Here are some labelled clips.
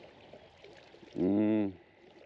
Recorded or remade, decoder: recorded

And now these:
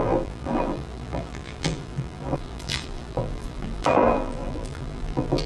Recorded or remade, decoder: remade, vocoder, BigVGAN v2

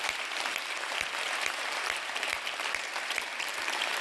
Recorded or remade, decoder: remade, vocoder, BigVGAN v2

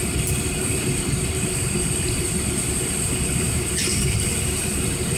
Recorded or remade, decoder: remade, vocoder, BigVGAN v2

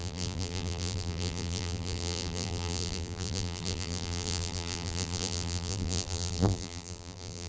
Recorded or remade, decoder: remade, vocoder, BigVGAN v2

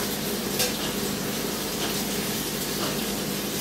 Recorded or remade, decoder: recorded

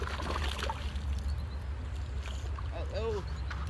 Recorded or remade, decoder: recorded